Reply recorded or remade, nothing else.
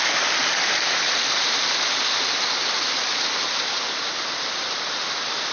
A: recorded